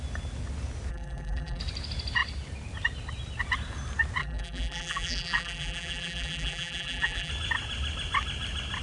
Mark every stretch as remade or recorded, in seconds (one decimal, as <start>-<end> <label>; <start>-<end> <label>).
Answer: 0.0-0.9 recorded; 0.9-1.6 remade; 1.6-4.2 recorded; 4.2-7.3 remade; 7.3-8.8 recorded